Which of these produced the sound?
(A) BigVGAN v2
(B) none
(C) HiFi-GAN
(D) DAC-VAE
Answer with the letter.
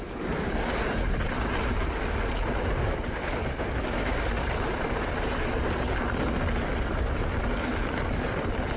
B